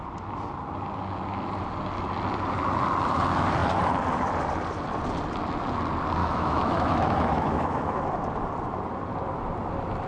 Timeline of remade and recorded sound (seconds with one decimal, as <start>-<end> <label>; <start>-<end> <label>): 0.0-6.2 recorded; 6.2-8.0 remade; 8.0-10.1 recorded